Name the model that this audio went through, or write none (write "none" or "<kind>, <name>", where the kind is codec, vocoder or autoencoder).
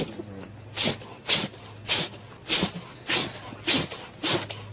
none